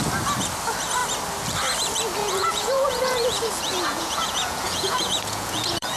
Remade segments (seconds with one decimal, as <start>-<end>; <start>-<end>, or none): 2.2-6.0